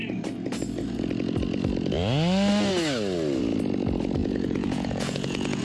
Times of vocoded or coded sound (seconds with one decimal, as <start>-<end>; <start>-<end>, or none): 4.2-5.6